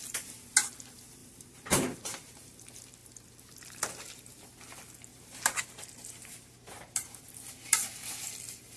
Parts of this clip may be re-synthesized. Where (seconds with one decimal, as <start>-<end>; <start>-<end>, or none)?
1.2-2.6; 5.1-7.5